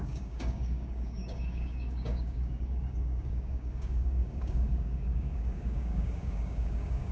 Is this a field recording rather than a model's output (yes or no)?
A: no